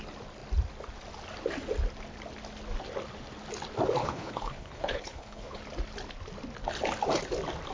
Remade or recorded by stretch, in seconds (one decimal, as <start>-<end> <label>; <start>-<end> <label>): 0.0-4.0 recorded; 4.0-5.6 remade; 5.6-7.7 recorded